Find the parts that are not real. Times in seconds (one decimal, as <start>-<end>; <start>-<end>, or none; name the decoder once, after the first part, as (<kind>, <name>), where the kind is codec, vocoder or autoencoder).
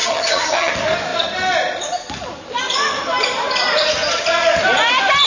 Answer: 0.0-0.7 (vocoder, HiFi-GAN)